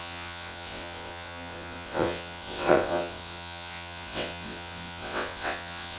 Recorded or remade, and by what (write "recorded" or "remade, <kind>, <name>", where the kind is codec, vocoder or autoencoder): remade, vocoder, WaveNeXt